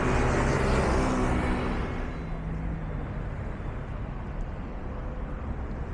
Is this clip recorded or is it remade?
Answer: recorded